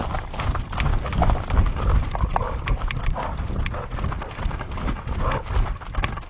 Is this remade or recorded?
recorded